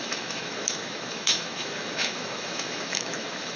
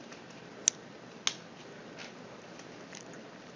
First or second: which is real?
second